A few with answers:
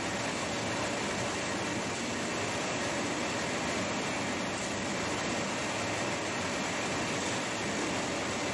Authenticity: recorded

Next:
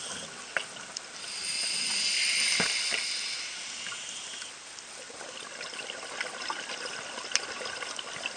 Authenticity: recorded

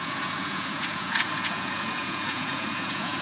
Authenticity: remade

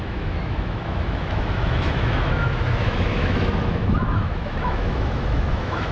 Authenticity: remade